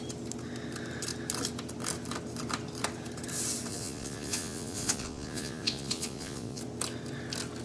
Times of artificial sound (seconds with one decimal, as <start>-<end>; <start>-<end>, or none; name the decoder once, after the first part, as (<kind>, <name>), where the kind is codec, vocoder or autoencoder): 3.7-6.6 (vocoder, Vocos)